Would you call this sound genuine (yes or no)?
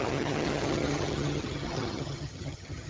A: no